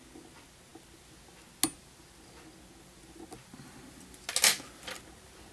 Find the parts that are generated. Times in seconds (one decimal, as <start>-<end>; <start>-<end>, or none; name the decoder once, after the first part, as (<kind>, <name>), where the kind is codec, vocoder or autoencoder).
none